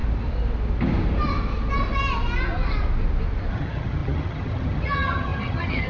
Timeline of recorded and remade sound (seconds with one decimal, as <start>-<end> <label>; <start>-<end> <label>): 0.0-3.5 recorded; 3.5-5.9 remade